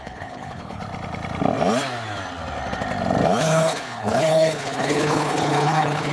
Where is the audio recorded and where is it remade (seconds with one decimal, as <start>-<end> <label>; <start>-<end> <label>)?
0.0-0.8 remade; 0.8-3.4 recorded; 3.4-6.1 remade

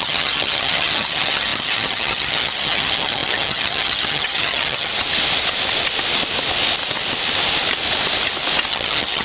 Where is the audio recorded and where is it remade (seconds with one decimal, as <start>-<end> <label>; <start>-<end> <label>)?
0.0-4.9 remade; 4.9-8.7 recorded; 8.7-9.2 remade

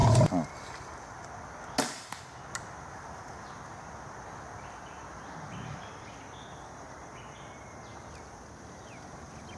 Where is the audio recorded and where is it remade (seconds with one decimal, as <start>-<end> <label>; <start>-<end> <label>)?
0.0-1.6 remade; 1.6-9.6 recorded

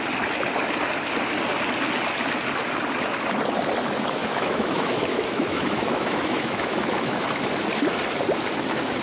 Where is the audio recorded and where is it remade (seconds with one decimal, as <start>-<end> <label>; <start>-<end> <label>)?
0.0-4.2 recorded; 4.2-7.2 remade; 7.2-9.0 recorded

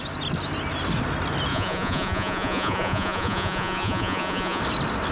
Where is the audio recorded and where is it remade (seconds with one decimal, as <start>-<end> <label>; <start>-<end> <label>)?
0.0-1.5 recorded; 1.5-4.6 remade; 4.6-5.1 recorded

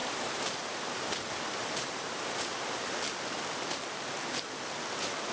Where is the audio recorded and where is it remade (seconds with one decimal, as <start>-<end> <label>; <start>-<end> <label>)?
0.0-2.3 remade; 2.3-5.3 recorded

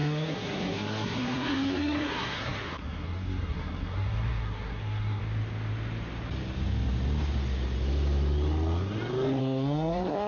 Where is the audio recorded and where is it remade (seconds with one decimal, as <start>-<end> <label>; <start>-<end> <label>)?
0.0-5.2 remade; 5.2-9.4 recorded; 9.4-10.3 remade